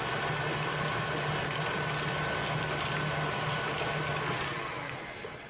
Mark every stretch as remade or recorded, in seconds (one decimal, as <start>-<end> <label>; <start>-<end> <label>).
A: 0.0-5.5 recorded